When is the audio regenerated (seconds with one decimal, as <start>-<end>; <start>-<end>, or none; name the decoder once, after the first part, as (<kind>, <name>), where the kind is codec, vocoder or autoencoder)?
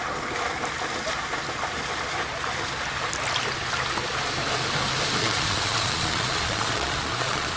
5.2-7.6 (vocoder, Vocos)